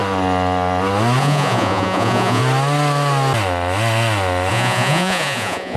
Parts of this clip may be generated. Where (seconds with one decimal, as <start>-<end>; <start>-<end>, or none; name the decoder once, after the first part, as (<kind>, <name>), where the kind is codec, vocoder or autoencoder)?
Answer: 1.2-2.4 (vocoder, Vocos); 4.5-5.8